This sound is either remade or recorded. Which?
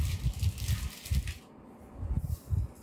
recorded